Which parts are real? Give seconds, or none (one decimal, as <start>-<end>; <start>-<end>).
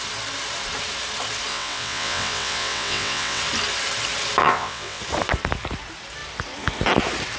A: 0.0-1.5; 3.4-4.4; 5.0-7.4